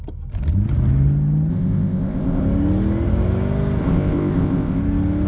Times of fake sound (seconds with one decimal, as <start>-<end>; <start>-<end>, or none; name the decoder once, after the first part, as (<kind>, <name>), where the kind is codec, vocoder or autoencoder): 1.5-2.4 (codec, ZipCodec); 3.8-4.8